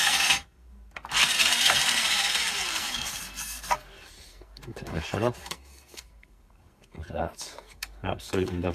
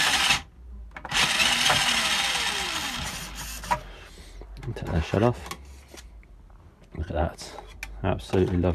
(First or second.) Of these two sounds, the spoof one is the first